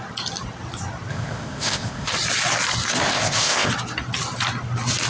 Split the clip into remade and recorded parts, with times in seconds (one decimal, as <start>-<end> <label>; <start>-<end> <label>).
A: 0.0-1.1 recorded; 1.1-2.1 remade; 2.1-3.1 recorded; 3.1-3.7 remade; 3.7-5.1 recorded